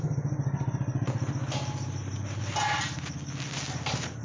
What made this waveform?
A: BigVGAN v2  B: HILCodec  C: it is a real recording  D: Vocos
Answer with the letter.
C